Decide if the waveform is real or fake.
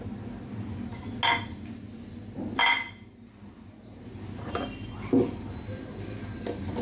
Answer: real